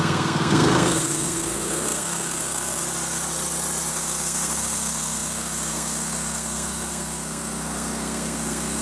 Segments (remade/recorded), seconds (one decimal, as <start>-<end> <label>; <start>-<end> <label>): 0.0-2.8 remade; 2.8-3.9 recorded; 3.9-8.8 remade